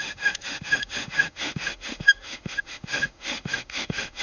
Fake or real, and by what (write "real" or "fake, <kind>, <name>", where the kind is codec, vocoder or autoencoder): fake, autoencoder, DAC-VAE